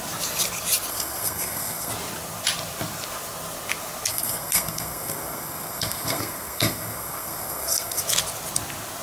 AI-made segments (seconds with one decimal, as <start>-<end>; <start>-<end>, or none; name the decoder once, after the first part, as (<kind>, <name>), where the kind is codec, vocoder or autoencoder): 0.9-1.9 (codec, SNAC); 4.1-8.0